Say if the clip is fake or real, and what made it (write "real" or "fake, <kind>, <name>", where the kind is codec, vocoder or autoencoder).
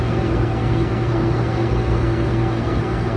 fake, codec, SNAC